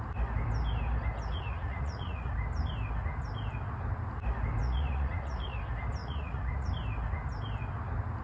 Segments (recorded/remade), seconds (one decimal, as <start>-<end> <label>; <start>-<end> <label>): 0.0-1.3 recorded; 1.3-2.3 remade; 2.3-4.6 recorded; 4.6-5.6 remade; 5.6-6.0 recorded; 6.0-6.7 remade; 6.7-8.2 recorded